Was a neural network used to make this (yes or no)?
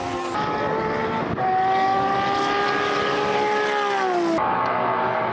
no